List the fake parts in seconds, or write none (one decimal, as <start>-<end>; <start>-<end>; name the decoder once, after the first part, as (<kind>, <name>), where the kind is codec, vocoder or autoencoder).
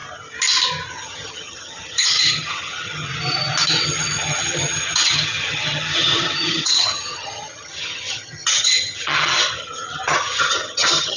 0.9-3.1 (vocoder, HiFi-GAN); 3.8-11.2